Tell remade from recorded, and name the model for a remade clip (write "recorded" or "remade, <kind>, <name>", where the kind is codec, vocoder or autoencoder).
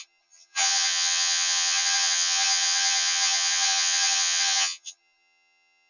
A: remade, vocoder, HiFi-GAN